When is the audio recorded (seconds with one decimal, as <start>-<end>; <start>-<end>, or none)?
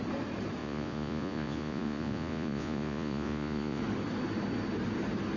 0.0-0.6; 3.8-5.4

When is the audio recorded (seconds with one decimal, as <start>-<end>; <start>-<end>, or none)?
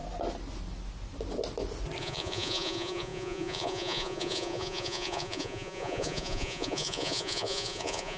0.0-2.0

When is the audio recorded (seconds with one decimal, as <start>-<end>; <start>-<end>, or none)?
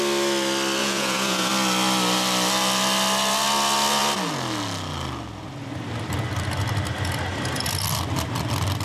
0.0-0.8; 1.5-8.8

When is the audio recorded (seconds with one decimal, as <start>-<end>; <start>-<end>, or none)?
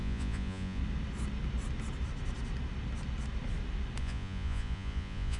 0.8-4.0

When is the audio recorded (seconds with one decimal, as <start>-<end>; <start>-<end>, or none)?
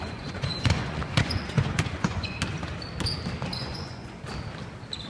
2.4-3.5; 4.2-5.1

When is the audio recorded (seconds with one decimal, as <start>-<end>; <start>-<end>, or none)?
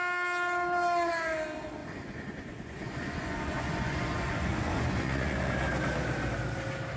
0.0-1.8; 5.5-7.0